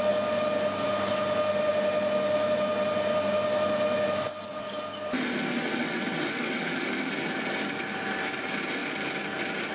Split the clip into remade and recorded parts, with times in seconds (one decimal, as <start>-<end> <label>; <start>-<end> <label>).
0.0-5.5 recorded; 5.5-6.6 remade; 6.6-9.7 recorded